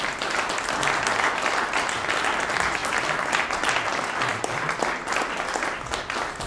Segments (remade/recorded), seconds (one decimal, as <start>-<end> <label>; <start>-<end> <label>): 0.0-6.5 recorded